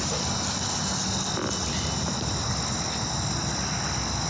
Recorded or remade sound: recorded